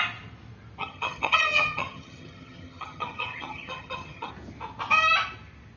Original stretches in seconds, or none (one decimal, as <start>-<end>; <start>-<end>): 0.0-0.8; 4.3-5.8

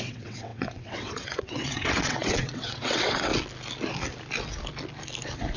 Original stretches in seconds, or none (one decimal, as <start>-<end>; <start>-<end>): 3.3-5.6

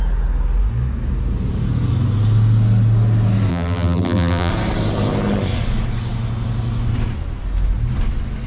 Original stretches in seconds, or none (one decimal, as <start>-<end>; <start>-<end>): 0.0-3.5; 4.5-8.5

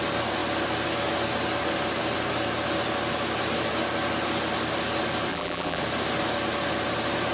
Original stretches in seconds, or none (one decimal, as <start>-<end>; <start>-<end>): 0.0-5.3; 5.8-7.3

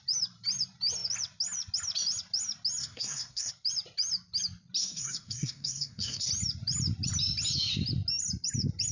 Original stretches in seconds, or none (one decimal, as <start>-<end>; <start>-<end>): 0.0-2.8; 3.5-4.8; 6.3-8.9

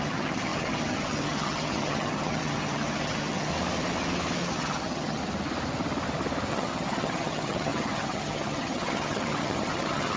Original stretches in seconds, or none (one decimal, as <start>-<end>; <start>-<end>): 3.5-4.5; 5.2-6.5